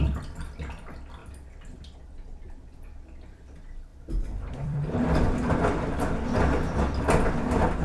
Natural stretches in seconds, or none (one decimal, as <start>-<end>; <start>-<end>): 0.0-3.9; 5.9-7.8